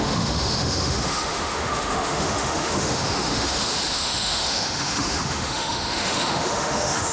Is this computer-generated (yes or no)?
yes